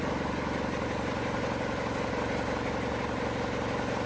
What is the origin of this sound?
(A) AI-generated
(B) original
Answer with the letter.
B